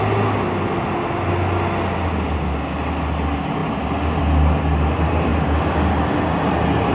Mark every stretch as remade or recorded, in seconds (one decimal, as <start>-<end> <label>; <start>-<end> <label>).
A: 0.0-6.9 recorded